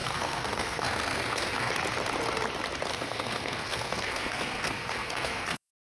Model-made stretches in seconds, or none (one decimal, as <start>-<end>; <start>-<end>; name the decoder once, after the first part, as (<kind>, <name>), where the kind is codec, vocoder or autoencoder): 0.0-1.7 (codec, SNAC); 2.9-5.8